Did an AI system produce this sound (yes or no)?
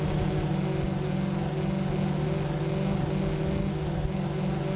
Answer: no